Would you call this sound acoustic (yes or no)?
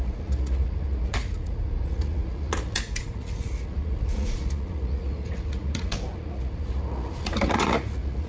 no